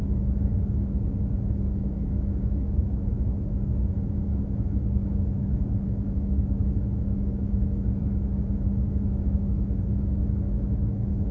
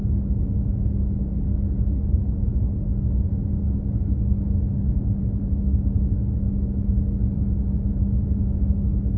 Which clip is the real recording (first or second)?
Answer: second